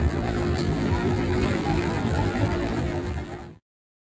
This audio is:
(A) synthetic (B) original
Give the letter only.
A